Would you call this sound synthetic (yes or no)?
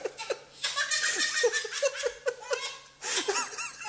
no